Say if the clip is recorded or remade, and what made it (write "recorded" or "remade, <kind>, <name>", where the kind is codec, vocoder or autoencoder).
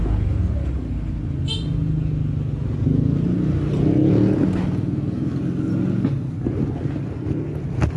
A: recorded